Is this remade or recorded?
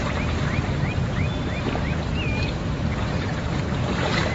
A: remade